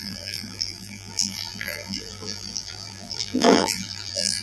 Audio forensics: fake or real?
fake